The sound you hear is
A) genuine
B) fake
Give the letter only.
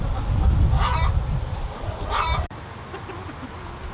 A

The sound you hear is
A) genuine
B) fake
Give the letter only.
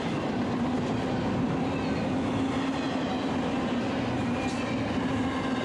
A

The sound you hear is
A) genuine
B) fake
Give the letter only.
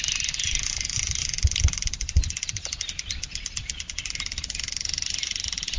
A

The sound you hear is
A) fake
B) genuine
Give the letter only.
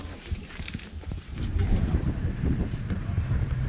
A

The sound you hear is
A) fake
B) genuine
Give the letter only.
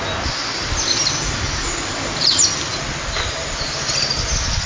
B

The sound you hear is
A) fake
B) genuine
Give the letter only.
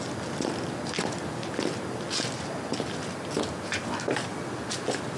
B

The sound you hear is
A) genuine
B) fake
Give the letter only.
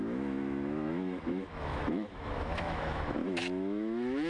B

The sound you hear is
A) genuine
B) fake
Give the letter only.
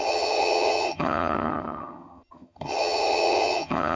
B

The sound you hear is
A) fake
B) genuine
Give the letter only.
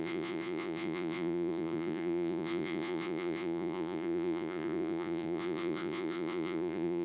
A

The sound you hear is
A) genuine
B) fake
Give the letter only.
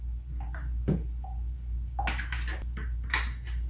A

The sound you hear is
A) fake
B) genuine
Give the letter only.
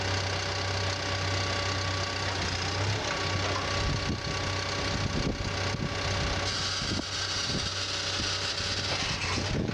B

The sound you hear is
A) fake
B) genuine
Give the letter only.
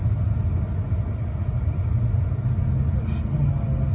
B